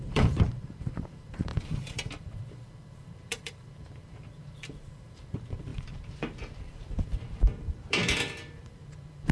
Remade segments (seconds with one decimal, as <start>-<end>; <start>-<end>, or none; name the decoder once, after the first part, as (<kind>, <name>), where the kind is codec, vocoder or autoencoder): 0.0-9.3 (vocoder, BigVGAN v2)

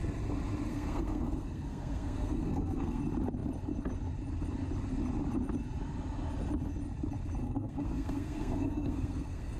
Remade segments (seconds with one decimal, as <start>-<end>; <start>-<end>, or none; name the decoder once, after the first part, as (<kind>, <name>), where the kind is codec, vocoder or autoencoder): 0.7-3.0 (codec, SNAC); 7.4-9.6

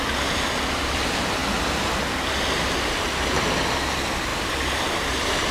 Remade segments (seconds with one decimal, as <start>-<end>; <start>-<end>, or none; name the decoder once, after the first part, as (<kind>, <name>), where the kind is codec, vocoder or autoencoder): none

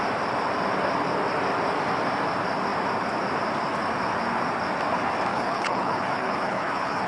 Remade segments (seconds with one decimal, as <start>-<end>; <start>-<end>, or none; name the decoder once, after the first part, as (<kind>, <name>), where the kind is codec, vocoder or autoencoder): 5.3-7.1 (codec, HILCodec)

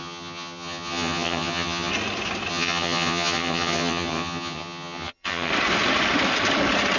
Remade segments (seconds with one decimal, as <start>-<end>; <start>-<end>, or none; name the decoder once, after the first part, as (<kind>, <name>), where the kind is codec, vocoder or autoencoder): 0.0-1.9 (vocoder, HiFi-GAN); 2.5-5.5

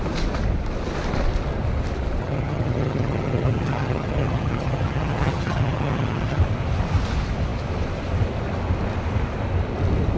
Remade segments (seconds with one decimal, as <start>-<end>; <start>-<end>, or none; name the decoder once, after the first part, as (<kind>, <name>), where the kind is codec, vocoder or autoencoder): 2.2-6.4 (vocoder, HiFi-GAN)